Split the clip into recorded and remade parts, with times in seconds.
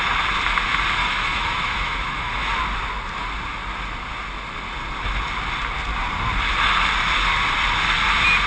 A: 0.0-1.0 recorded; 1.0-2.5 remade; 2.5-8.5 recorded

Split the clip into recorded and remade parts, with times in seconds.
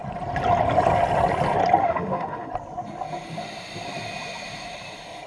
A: 0.0-1.8 recorded; 1.8-2.5 remade; 2.5-5.3 recorded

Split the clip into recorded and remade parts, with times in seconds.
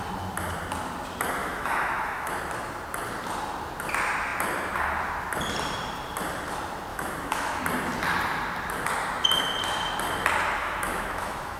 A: 0.0-1.4 recorded; 1.4-2.3 remade; 2.3-6.9 recorded; 6.9-7.6 remade; 7.6-10.6 recorded; 10.6-11.6 remade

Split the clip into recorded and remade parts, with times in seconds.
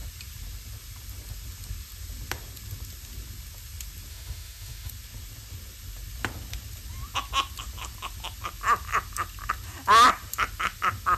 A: 0.0-4.1 recorded; 4.1-4.9 remade; 4.9-11.2 recorded